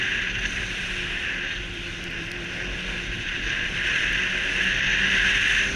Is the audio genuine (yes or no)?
yes